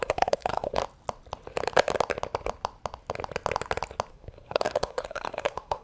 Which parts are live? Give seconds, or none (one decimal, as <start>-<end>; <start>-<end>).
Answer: 0.8-4.1